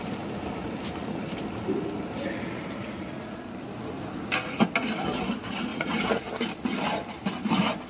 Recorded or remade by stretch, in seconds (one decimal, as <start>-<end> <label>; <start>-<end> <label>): 0.0-2.8 recorded; 2.8-3.4 remade; 3.4-5.7 recorded; 5.7-6.2 remade; 6.2-7.9 recorded